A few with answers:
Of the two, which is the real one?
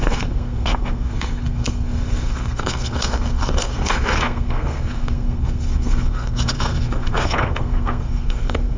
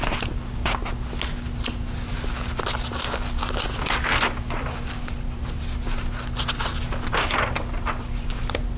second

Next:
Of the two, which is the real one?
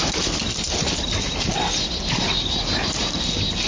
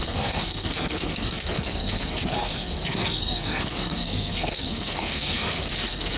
first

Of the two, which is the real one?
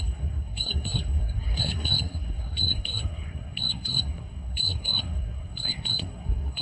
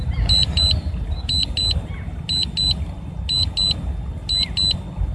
second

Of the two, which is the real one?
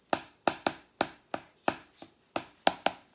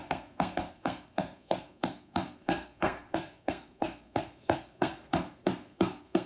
first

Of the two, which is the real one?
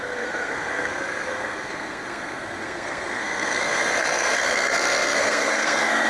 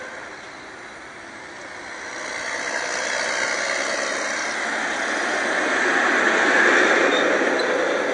second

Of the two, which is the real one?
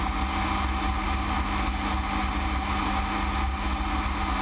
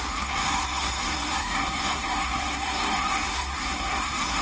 first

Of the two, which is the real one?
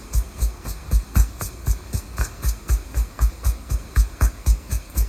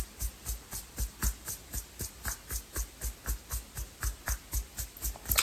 second